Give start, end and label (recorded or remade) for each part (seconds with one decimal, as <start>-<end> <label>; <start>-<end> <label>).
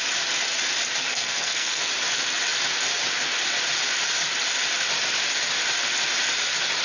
0.0-1.1 recorded; 1.1-1.9 remade; 1.9-6.8 recorded